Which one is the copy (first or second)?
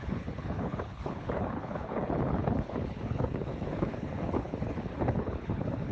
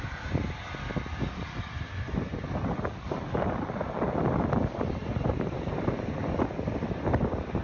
first